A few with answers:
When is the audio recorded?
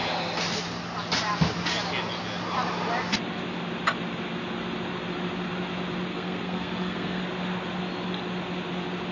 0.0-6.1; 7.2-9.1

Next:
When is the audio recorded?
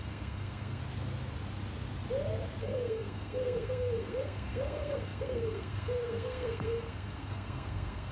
0.8-2.6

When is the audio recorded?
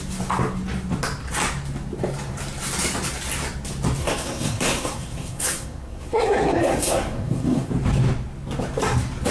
0.0-4.0; 7.7-9.3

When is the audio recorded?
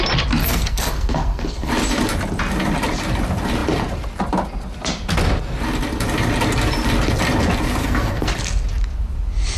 0.0-0.4; 1.7-7.8; 8.3-9.6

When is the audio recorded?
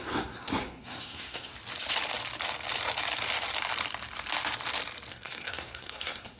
1.5-5.1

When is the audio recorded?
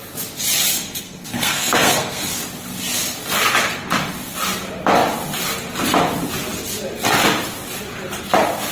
0.0-0.7; 2.4-8.7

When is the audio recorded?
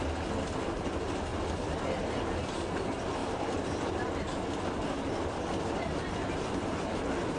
0.0-7.4